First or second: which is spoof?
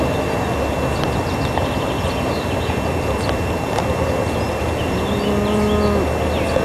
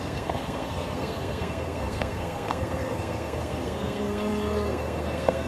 second